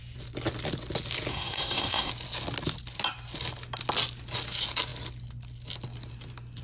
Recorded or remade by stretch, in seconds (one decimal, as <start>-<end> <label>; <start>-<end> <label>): 0.0-1.3 recorded; 1.3-2.1 remade; 2.1-6.6 recorded